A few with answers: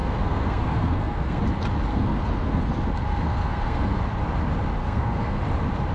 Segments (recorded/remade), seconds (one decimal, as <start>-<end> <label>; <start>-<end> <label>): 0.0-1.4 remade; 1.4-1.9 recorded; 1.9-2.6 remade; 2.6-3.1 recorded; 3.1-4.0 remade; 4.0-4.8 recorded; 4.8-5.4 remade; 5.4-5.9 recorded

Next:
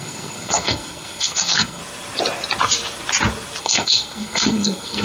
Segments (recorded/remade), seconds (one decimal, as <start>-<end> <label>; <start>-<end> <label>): 0.0-1.8 remade; 1.8-3.6 recorded; 3.6-5.0 remade

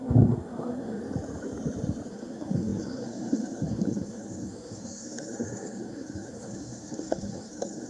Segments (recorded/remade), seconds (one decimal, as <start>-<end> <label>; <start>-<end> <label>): 0.0-1.0 remade; 1.0-2.1 recorded; 2.1-7.9 remade

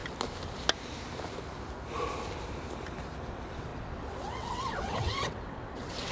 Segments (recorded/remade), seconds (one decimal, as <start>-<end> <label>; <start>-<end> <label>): 0.0-3.3 recorded; 3.3-6.1 remade

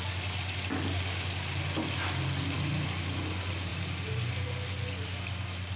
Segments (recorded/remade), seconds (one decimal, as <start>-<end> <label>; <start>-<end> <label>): 0.0-5.8 recorded

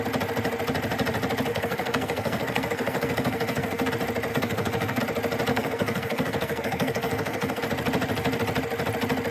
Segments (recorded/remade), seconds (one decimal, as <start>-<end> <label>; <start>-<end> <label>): 0.0-1.5 recorded; 1.5-3.9 remade; 3.9-4.3 recorded; 4.3-5.0 remade; 5.0-5.5 recorded; 5.5-7.6 remade; 7.6-9.3 recorded

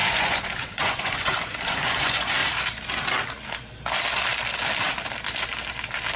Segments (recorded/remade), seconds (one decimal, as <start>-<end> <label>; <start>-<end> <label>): 0.0-2.4 remade; 2.4-6.2 recorded

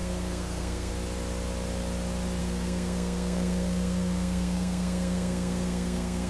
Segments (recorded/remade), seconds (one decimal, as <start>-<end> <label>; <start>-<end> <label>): 0.0-0.9 remade; 0.9-2.4 recorded; 2.4-6.3 remade